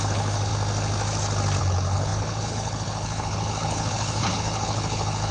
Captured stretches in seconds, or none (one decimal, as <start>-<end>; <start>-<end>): 0.5-1.6